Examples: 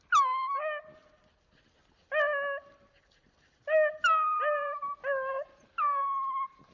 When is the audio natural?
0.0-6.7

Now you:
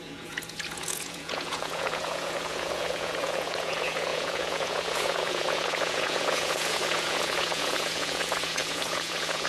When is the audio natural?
none

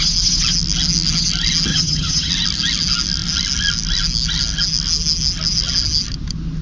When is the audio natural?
0.0-1.7; 2.3-6.6

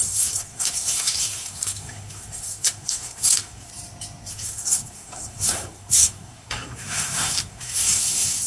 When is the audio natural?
3.7-4.3

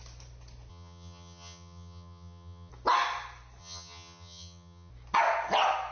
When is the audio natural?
0.0-0.7; 2.7-3.6; 4.9-5.9

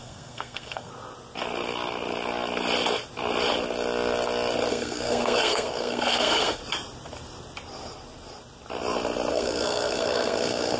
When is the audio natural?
0.9-4.7; 6.6-9.3

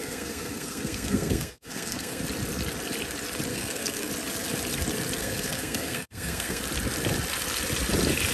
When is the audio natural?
2.2-3.5; 4.1-5.2; 6.6-8.3